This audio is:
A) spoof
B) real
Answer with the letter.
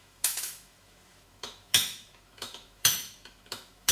A